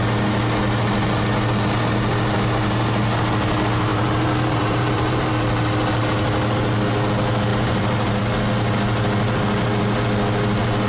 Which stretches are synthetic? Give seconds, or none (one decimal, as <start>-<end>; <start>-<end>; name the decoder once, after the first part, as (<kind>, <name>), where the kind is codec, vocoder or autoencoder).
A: 3.9-5.3 (vocoder, BigVGAN v2); 7.5-8.2